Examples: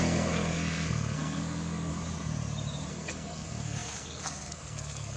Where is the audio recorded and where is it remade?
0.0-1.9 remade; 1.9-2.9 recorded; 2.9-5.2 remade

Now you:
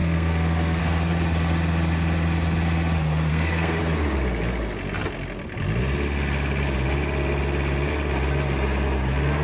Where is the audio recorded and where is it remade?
0.0-0.8 remade; 0.8-3.3 recorded; 3.3-3.8 remade; 3.8-9.4 recorded

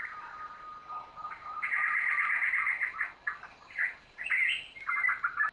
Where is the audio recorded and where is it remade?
0.0-3.9 recorded; 3.9-5.5 remade

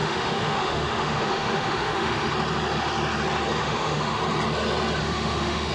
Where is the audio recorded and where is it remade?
0.0-2.3 remade; 2.3-3.6 recorded; 3.6-4.2 remade; 4.2-5.0 recorded; 5.0-5.7 remade